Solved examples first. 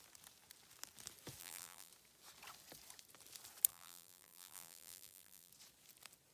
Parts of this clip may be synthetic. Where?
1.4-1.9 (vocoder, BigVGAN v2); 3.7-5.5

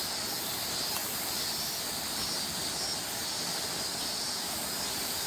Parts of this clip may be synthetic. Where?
1.0-1.7 (vocoder, BigVGAN v2); 3.2-5.3

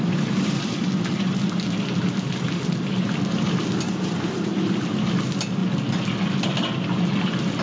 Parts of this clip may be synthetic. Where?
none

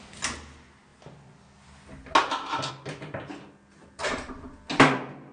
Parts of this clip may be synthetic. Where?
3.8-4.3 (vocoder, BigVGAN v2)

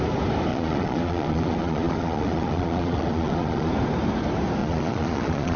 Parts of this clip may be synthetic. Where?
0.5-3.7 (vocoder, Vocos); 4.6-5.6

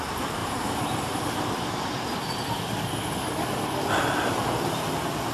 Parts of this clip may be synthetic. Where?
0.4-1.9 (vocoder, BigVGAN v2)

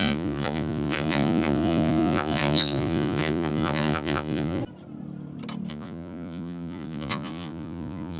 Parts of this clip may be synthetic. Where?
0.0-4.6 (vocoder, Vocos); 5.7-8.2